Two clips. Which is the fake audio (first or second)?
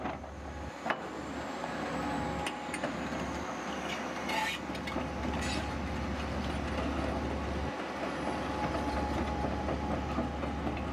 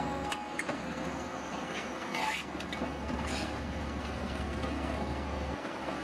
second